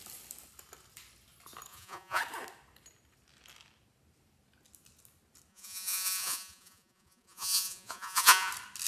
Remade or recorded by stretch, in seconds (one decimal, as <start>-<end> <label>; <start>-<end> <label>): 0.0-1.7 recorded; 1.7-2.2 remade; 2.2-5.5 recorded; 5.5-8.5 remade; 8.5-8.9 recorded